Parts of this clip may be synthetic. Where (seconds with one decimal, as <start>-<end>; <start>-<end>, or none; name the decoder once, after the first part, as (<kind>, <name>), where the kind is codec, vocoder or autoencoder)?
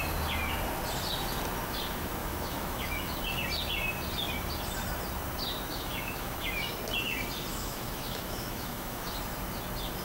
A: 2.2-3.2 (autoencoder, DAC-VAE); 5.7-6.7; 7.5-9.1